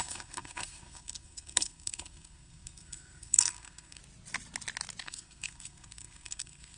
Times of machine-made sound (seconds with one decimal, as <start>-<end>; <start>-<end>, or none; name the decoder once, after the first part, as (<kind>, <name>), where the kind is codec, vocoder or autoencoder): 0.0-4.0 (codec, SNAC); 5.0-6.8